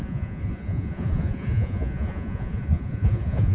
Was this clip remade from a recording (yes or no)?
yes